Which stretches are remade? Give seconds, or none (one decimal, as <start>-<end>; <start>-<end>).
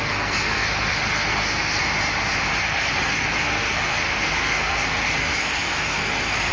0.0-1.8; 2.6-6.5